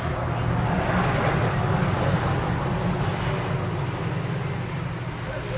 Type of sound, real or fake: real